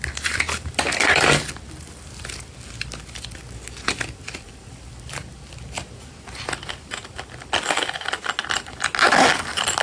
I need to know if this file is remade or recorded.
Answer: recorded